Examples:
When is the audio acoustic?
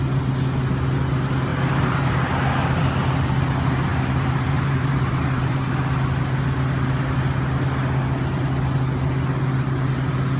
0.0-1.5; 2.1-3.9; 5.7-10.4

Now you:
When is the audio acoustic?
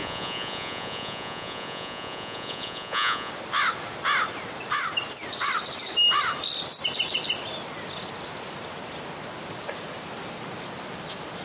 3.3-11.4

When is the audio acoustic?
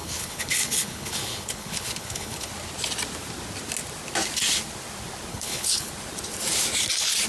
2.5-5.3; 5.9-7.3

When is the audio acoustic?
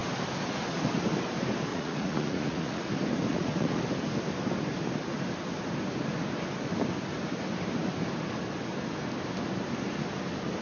0.0-1.7; 2.9-3.3; 3.8-10.6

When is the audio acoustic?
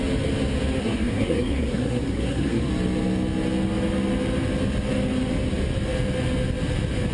0.0-0.8; 2.7-7.1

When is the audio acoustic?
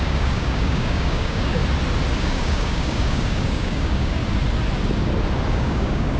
1.6-2.2; 4.2-5.5